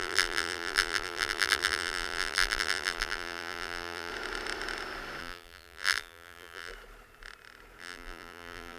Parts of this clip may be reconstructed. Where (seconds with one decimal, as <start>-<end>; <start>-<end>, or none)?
0.0-4.1; 5.2-6.7; 7.8-8.8